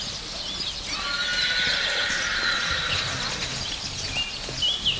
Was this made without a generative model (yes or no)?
yes